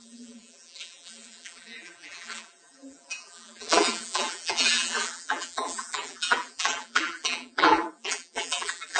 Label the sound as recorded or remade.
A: remade